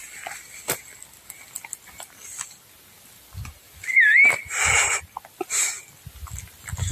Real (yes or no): yes